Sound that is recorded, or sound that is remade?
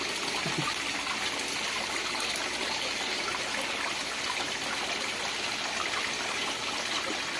recorded